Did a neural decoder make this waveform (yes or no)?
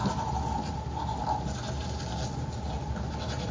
no